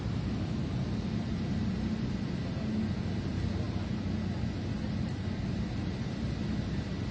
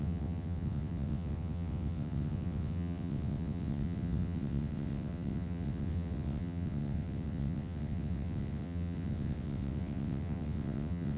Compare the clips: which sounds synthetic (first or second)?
second